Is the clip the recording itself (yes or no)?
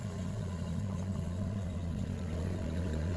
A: no